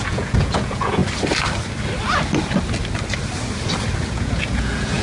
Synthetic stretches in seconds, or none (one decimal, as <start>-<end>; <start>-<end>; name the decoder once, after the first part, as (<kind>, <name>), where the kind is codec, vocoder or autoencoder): 0.0-1.0 (vocoder, Vocos); 4.0-5.0